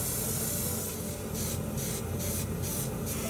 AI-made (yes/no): no